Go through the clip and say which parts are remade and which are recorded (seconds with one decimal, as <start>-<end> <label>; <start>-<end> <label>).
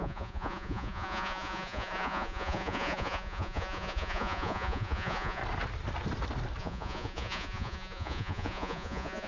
0.0-5.4 remade; 5.4-6.6 recorded; 6.6-9.3 remade